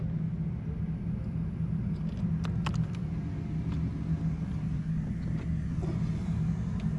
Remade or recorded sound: recorded